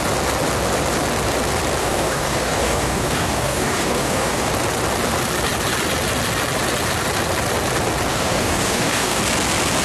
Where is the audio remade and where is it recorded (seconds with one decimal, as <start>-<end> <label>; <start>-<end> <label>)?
0.0-1.8 recorded; 1.8-4.5 remade; 4.5-8.1 recorded; 8.1-9.2 remade; 9.2-9.8 recorded